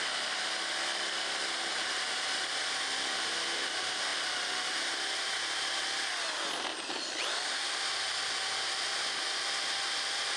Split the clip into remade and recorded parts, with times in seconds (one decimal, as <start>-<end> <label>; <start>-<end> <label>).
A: 0.0-10.4 recorded